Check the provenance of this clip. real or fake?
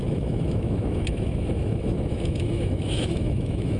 fake